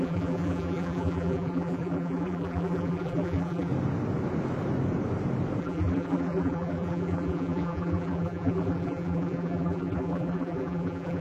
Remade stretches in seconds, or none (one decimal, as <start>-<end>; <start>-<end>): 0.0-3.7; 5.6-11.2